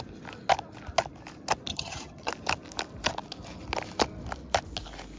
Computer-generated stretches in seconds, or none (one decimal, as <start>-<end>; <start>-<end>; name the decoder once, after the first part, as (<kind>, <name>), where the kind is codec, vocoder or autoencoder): 1.7-2.3 (vocoder, HiFi-GAN)